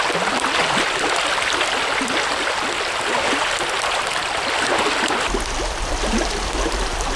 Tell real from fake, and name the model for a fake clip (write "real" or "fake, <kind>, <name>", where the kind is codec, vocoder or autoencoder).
real